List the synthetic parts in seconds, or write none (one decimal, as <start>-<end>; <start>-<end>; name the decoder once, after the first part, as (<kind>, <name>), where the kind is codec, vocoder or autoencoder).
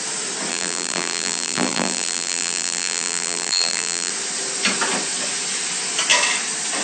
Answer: 0.5-4.1 (vocoder, BigVGAN v2)